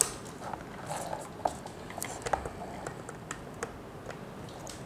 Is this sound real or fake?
real